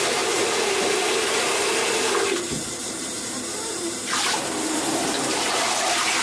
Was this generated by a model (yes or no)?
yes